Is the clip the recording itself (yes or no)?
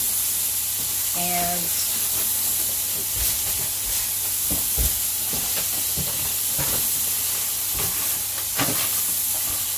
yes